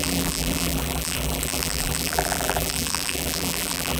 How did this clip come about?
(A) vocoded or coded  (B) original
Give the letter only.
A